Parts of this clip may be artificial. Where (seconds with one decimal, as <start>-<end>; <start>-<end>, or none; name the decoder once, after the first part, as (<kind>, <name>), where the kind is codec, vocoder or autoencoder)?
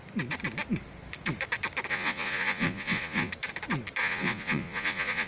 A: 1.9-3.3 (vocoder, Vocos); 4.0-5.3